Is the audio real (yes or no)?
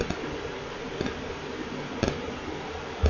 yes